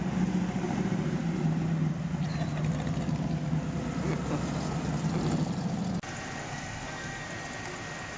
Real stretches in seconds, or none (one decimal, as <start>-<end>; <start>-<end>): 0.0-6.4; 7.3-8.2